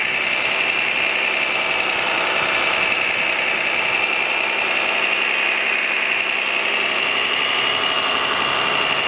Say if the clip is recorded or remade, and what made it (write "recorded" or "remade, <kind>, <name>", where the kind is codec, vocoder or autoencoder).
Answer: recorded